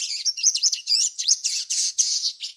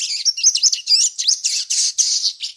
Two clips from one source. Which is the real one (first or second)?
second